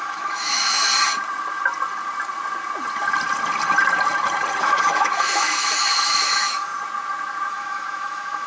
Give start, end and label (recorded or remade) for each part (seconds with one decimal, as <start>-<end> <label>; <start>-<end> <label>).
0.0-0.9 remade; 0.9-4.6 recorded; 4.6-6.7 remade; 6.7-7.5 recorded; 7.5-8.5 remade